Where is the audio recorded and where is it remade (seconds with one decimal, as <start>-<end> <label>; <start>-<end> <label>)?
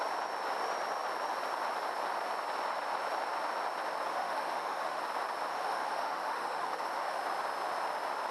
0.0-4.1 recorded; 4.1-5.0 remade; 5.0-5.5 recorded; 5.5-7.2 remade; 7.2-8.3 recorded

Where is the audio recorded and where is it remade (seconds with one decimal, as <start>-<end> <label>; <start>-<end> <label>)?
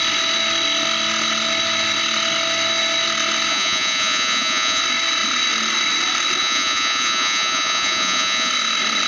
0.0-3.5 recorded; 3.5-4.8 remade; 4.8-6.4 recorded; 6.4-8.5 remade; 8.5-9.1 recorded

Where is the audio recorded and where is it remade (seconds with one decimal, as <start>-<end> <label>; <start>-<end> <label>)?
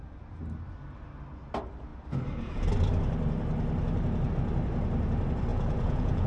0.0-5.5 recorded; 5.5-6.3 remade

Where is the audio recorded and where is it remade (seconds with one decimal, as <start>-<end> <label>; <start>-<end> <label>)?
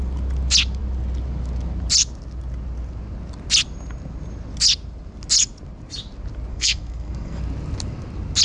0.0-6.5 recorded; 6.5-7.4 remade; 7.4-8.4 recorded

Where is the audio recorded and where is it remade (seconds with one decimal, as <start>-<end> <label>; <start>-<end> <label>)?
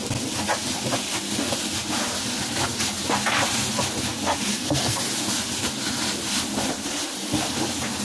0.0-4.5 recorded; 4.5-5.0 remade; 5.0-8.0 recorded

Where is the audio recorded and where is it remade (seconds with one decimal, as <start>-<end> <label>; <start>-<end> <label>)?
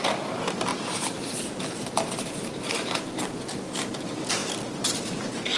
0.0-5.6 recorded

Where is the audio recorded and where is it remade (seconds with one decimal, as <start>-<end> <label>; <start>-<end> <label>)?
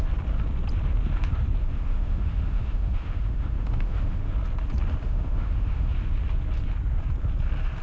0.0-1.6 recorded; 1.6-4.3 remade; 4.3-5.0 recorded; 5.0-5.9 remade; 5.9-7.8 recorded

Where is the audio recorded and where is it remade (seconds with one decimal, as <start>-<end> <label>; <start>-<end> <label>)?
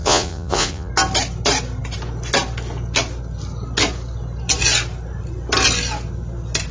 0.0-0.9 remade; 0.9-6.7 recorded